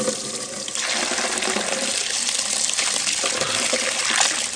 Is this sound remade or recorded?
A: recorded